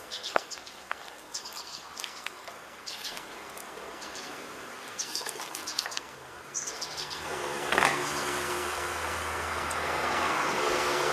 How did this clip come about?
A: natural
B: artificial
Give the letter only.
B